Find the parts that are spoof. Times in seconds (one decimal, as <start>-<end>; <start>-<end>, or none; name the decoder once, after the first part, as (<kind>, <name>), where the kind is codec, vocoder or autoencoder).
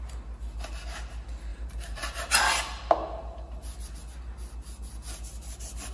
1.5-2.4 (vocoder, BigVGAN v2)